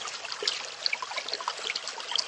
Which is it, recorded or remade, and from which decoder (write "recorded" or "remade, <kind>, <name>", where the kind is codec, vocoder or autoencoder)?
recorded